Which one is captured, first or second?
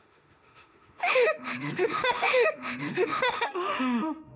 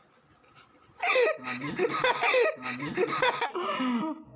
second